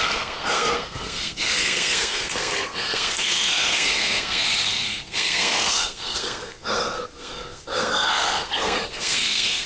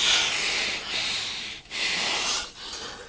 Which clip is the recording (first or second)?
second